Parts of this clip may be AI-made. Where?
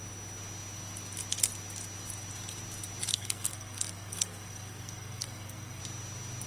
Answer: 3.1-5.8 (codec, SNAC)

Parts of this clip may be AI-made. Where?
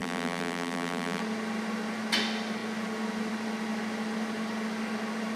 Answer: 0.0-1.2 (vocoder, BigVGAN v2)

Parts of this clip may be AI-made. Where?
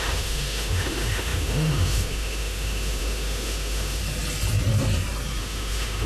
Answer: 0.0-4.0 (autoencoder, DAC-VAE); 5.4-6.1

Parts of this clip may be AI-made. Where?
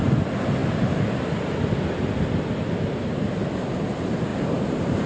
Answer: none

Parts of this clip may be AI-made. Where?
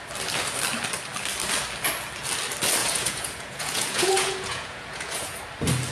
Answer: 2.8-5.4 (vocoder, Vocos)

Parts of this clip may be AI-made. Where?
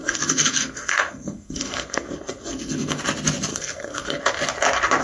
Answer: 0.0-3.0 (codec, SNAC); 3.5-4.2